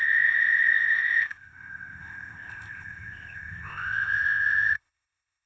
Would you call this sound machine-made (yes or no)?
yes